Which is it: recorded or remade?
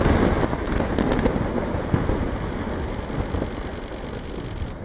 recorded